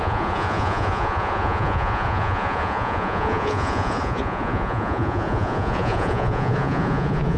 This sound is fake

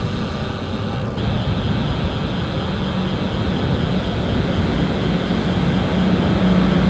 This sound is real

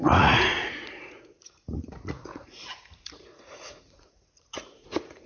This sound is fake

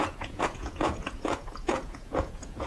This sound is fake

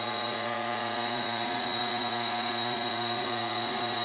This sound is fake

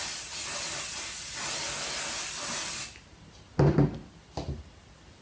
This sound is real